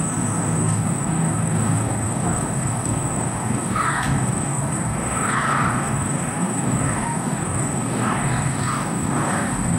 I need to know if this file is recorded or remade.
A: remade